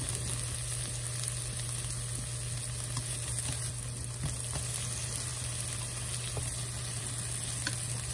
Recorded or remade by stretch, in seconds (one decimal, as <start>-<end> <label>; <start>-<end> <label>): 0.0-8.1 recorded

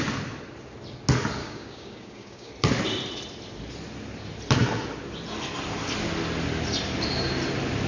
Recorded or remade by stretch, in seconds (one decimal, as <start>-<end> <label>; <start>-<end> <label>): 0.0-1.4 recorded; 1.4-2.5 remade; 2.5-7.9 recorded

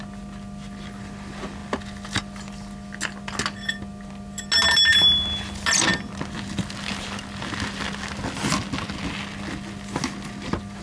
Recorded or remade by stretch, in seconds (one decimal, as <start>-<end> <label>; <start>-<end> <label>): 0.0-10.8 recorded

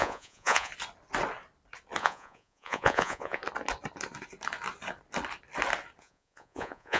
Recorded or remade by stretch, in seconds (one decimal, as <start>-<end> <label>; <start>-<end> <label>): 0.0-0.7 remade; 0.7-2.0 recorded; 2.0-3.4 remade; 3.4-6.0 recorded; 6.0-7.0 remade

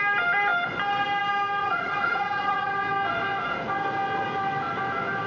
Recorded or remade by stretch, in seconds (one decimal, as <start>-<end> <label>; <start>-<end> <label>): 0.0-1.6 recorded; 1.6-2.7 remade; 2.7-5.3 recorded

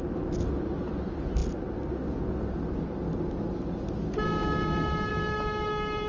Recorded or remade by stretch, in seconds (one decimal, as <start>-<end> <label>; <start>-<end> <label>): 0.0-6.1 recorded

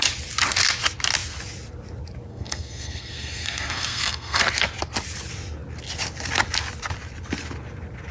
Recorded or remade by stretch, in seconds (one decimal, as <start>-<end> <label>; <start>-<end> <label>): 0.0-2.3 recorded; 2.3-4.4 remade; 4.4-8.1 recorded

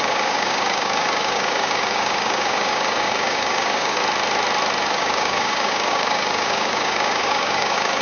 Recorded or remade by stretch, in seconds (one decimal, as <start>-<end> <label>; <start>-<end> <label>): 0.0-4.0 remade; 4.0-4.8 recorded; 4.8-8.0 remade